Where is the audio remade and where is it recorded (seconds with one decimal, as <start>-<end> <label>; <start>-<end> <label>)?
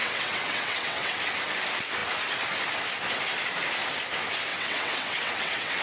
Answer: 0.0-1.2 remade; 1.2-4.5 recorded; 4.5-5.8 remade